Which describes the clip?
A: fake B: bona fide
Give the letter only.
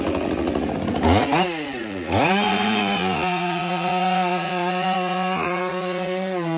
A